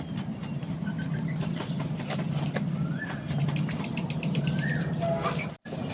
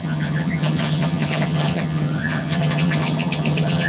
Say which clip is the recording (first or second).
first